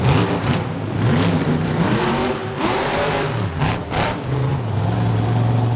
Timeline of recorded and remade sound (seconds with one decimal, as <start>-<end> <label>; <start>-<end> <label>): 0.0-5.8 remade